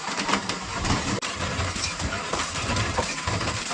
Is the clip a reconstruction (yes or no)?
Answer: yes